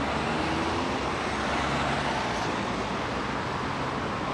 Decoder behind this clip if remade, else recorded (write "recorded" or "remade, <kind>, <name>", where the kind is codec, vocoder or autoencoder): recorded